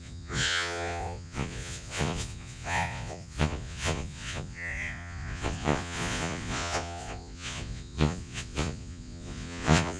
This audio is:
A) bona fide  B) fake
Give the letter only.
B